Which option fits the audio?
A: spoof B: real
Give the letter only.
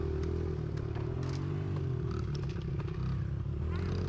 B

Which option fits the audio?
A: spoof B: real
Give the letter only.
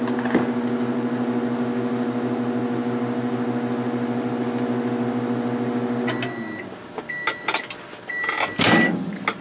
B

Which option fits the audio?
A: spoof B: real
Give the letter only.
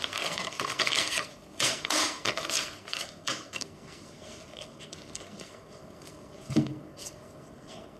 A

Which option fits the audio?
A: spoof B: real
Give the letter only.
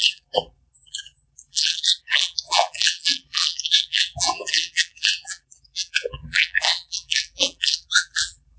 A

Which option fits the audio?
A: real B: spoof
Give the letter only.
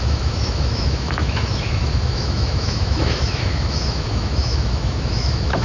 B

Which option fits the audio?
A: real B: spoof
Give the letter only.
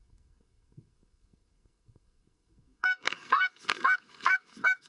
B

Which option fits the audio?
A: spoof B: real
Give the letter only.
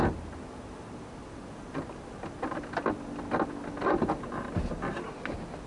B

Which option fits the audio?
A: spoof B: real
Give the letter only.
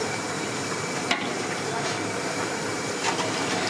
A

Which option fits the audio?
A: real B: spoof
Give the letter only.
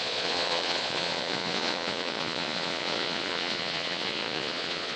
B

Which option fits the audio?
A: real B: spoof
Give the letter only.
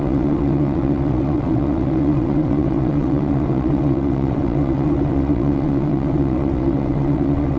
B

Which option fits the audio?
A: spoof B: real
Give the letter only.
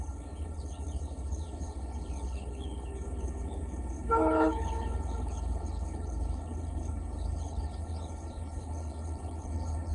A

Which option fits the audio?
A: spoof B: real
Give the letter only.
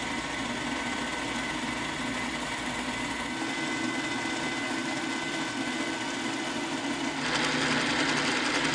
B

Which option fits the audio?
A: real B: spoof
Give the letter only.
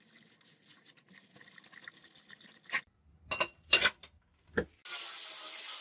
A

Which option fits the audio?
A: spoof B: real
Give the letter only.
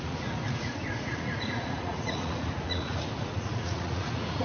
A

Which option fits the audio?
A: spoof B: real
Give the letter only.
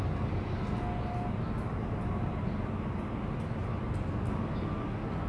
B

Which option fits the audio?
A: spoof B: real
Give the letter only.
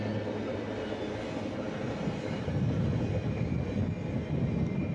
B